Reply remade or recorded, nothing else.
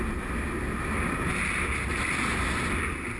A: recorded